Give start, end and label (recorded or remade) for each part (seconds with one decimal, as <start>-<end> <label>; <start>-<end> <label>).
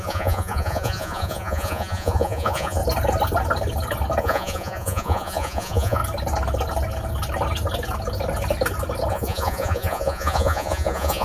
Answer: 0.0-2.8 remade; 2.8-4.2 recorded; 4.2-6.0 remade; 6.0-9.1 recorded; 9.1-11.2 remade